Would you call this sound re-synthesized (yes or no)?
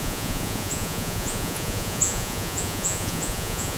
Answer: yes